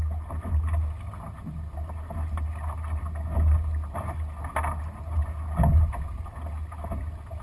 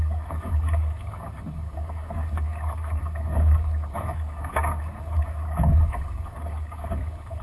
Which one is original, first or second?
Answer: first